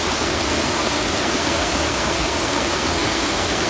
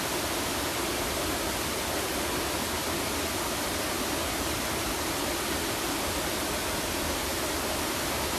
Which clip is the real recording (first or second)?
second